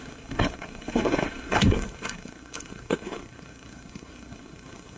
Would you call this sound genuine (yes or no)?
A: no